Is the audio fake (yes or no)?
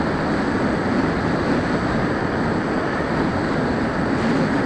no